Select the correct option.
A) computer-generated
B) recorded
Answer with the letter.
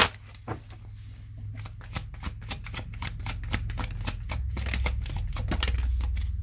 B